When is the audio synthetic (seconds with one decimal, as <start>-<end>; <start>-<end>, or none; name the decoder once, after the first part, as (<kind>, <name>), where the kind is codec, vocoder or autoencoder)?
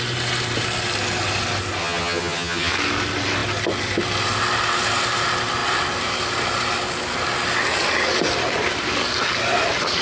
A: 1.8-2.7 (vocoder, HiFi-GAN)